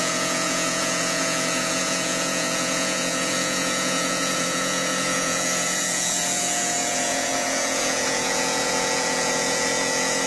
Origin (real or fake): fake